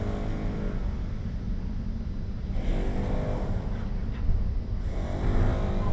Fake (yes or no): no